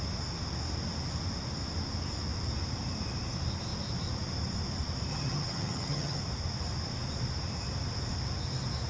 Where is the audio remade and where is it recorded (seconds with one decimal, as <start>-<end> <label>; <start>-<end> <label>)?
0.0-5.1 recorded; 5.1-6.2 remade; 6.2-8.9 recorded